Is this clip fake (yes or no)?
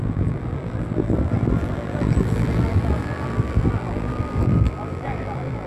yes